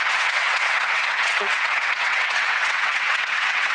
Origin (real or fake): fake